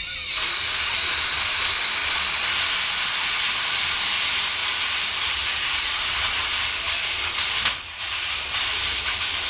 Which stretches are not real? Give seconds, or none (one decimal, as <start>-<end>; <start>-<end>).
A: none